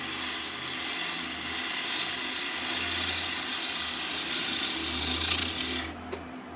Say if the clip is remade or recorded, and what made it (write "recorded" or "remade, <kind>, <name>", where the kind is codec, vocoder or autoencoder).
recorded